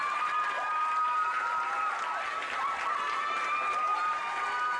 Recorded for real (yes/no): yes